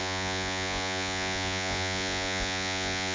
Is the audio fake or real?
fake